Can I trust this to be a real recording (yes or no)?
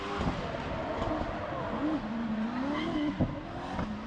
yes